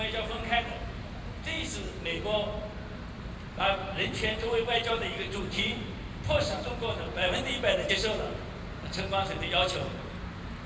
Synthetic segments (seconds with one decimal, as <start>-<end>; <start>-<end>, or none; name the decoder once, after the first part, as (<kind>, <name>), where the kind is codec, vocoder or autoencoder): 3.8-7.9 (vocoder, BigVGAN v2)